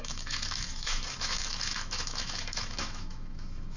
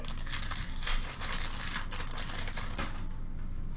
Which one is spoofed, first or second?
first